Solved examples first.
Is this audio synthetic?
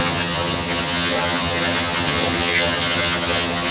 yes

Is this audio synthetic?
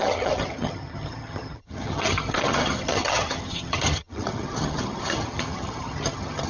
yes